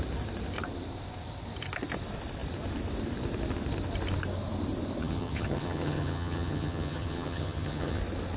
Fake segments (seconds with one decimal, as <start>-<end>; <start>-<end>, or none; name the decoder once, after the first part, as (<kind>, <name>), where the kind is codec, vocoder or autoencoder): 5.0-8.0 (vocoder, HiFi-GAN)